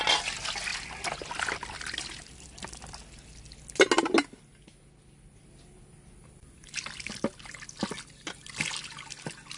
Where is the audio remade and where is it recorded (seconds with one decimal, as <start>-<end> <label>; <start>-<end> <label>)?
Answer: 0.0-9.6 recorded